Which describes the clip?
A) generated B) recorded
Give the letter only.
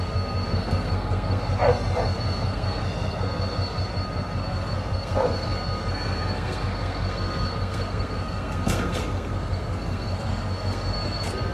A